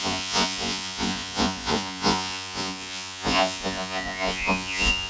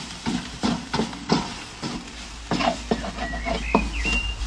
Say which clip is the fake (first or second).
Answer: first